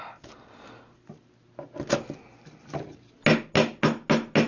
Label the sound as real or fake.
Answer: real